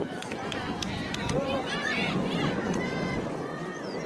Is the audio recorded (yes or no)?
no